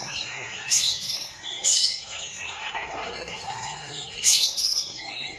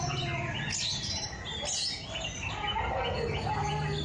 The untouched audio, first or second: second